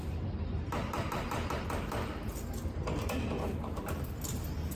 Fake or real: real